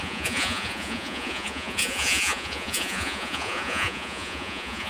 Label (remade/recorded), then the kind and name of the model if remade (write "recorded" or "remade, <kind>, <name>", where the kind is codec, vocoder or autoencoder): remade, vocoder, Vocos